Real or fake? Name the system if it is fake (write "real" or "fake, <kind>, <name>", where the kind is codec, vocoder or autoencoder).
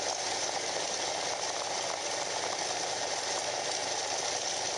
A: real